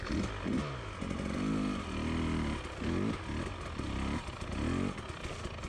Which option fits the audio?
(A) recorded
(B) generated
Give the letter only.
A